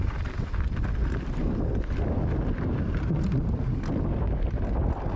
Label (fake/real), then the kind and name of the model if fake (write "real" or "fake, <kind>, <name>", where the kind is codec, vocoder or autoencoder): real